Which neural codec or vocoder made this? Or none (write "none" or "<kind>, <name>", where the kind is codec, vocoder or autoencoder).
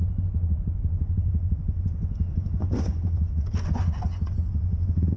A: vocoder, Vocos